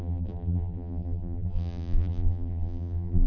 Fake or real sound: fake